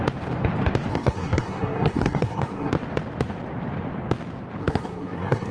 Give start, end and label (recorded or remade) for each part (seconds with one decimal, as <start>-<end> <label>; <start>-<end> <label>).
0.0-0.9 recorded; 0.9-2.7 remade; 2.7-4.6 recorded; 4.6-5.5 remade